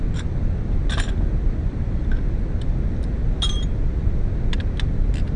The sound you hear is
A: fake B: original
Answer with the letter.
B